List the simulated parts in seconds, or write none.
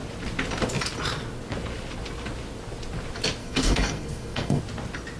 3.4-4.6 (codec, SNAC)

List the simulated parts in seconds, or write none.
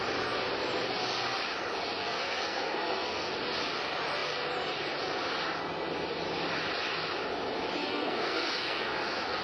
2.0-3.3 (codec, SNAC); 7.8-9.4